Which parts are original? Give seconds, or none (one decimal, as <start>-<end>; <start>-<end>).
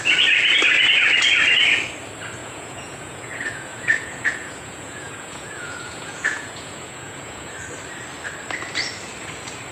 0.0-2.4; 7.5-9.7